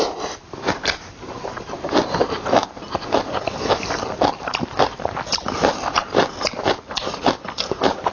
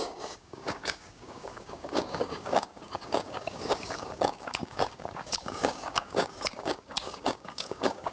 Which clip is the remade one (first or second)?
second